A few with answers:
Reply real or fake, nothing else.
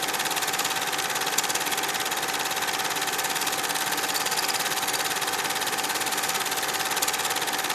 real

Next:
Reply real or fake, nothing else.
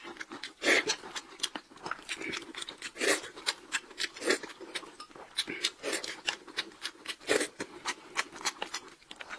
real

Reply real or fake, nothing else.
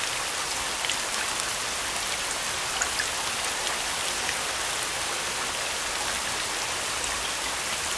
real